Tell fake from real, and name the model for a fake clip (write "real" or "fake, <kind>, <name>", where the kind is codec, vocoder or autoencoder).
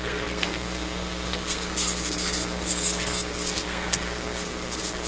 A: fake, codec, SNAC